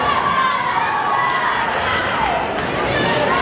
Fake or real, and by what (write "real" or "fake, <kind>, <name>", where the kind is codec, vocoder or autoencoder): real